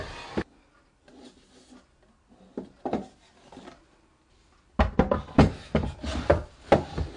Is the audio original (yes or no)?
yes